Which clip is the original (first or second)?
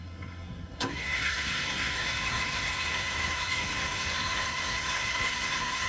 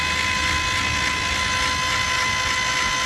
second